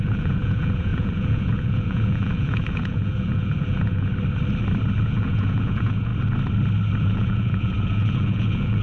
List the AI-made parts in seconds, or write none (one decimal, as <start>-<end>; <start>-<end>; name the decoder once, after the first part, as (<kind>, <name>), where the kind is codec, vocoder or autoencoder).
0.0-4.1 (vocoder, Vocos); 5.0-6.1; 7.0-8.8